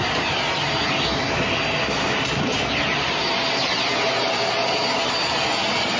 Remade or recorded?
recorded